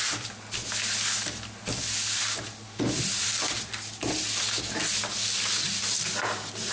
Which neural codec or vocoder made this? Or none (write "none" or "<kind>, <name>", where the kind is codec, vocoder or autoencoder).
none